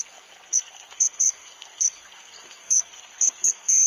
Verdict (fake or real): fake